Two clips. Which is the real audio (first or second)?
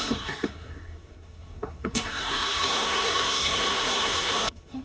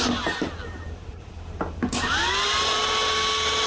second